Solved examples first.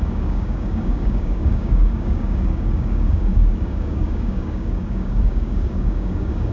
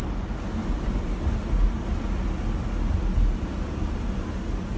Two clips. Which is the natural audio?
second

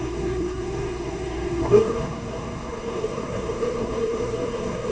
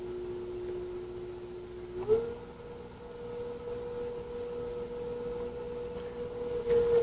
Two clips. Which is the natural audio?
second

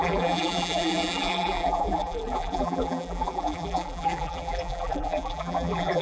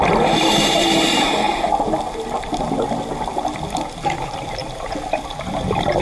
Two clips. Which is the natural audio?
second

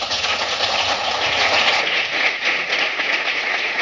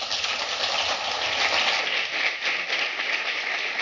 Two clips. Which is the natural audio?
second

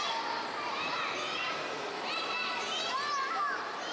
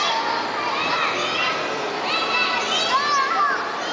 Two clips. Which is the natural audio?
second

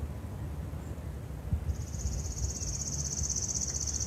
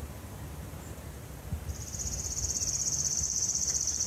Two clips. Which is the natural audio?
first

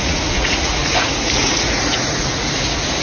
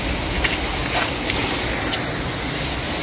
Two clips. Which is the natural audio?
second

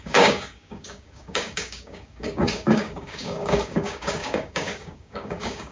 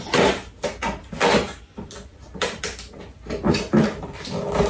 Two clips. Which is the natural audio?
second